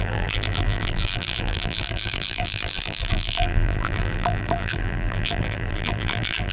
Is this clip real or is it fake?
fake